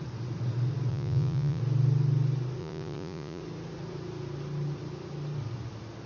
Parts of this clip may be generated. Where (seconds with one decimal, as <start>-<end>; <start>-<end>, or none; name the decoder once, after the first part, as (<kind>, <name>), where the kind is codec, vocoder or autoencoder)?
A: 0.9-1.6 (vocoder, Vocos); 2.6-3.4